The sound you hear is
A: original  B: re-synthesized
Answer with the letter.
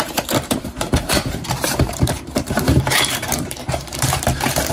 B